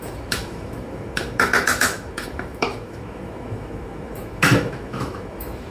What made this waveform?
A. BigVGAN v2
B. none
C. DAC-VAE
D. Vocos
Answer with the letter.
C